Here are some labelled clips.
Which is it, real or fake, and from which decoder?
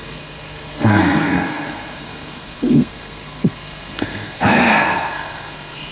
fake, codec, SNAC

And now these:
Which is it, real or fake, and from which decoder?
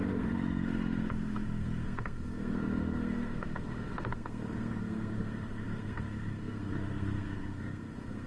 fake, codec, SNAC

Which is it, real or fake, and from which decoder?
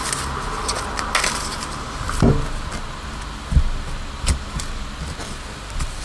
real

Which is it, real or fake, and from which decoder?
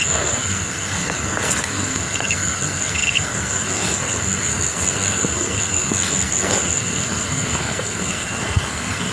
fake, codec, SNAC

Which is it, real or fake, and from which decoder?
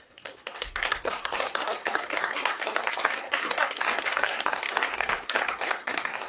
fake, codec, SNAC